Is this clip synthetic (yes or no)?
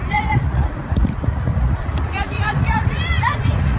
yes